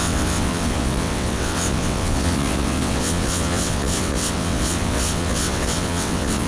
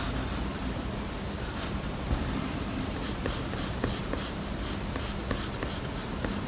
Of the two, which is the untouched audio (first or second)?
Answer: second